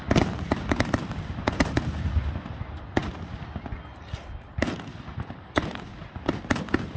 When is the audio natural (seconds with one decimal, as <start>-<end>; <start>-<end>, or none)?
0.0-7.0